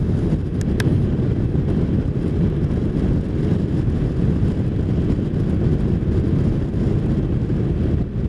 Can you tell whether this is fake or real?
real